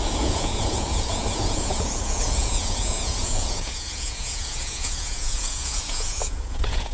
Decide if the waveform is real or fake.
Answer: fake